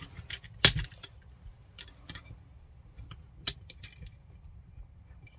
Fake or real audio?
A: real